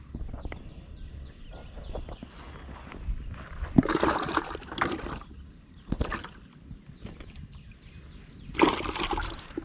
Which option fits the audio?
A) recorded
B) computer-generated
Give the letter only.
A